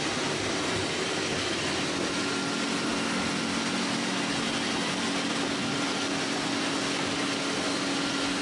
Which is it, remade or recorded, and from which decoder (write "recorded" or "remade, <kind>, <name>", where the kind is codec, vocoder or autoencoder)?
recorded